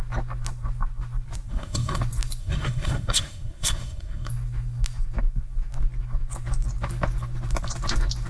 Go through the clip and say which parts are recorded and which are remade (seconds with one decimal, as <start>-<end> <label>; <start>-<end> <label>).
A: 0.0-1.5 recorded; 1.5-2.0 remade; 2.0-2.4 recorded; 2.4-4.3 remade; 4.3-8.3 recorded